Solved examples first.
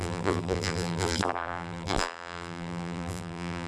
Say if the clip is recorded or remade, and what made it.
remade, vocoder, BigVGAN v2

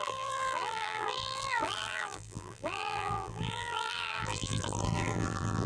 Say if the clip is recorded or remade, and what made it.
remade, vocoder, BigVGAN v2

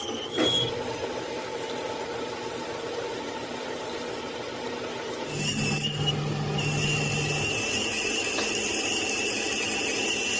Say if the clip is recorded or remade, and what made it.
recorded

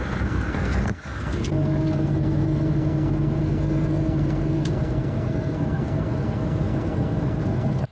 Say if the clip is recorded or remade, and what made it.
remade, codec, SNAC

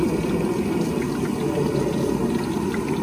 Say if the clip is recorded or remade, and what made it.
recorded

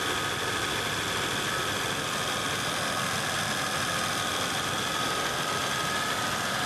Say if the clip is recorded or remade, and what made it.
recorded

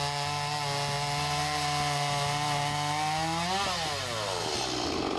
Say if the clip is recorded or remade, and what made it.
recorded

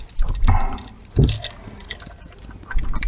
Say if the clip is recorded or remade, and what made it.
recorded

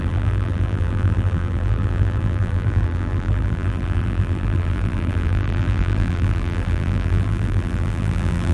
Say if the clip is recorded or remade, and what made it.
remade, vocoder, BigVGAN v2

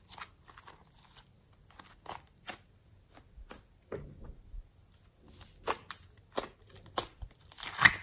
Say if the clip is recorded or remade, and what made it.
recorded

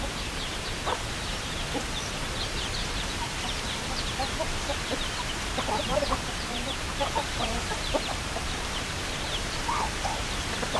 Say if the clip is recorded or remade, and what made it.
remade, vocoder, BigVGAN v2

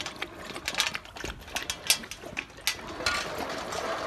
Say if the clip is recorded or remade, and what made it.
recorded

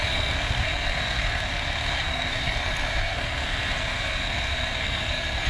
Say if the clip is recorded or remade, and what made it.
remade, codec, SNAC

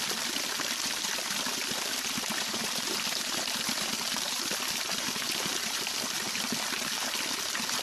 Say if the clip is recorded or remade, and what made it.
remade, vocoder, BigVGAN v2